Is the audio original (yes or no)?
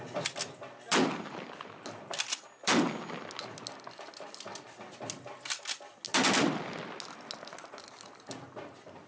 yes